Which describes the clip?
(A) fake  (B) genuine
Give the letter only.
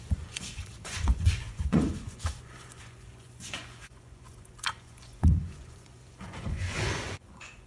A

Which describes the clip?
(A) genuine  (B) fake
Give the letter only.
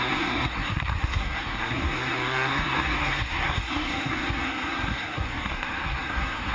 B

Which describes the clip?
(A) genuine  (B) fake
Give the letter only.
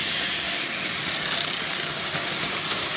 B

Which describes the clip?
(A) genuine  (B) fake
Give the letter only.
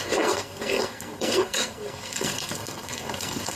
B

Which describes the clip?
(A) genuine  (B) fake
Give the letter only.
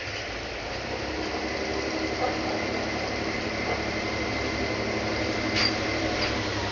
A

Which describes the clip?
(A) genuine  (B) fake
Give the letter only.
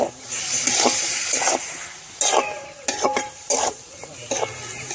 A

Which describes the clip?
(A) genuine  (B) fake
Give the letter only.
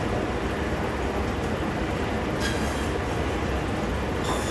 A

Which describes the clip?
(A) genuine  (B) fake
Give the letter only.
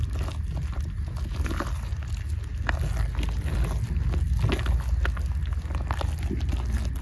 A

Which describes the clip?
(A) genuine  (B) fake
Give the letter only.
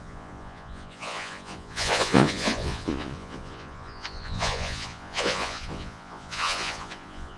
B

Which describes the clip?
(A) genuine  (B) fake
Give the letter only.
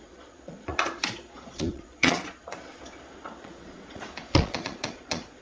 B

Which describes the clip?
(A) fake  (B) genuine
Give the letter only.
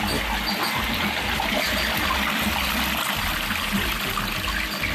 B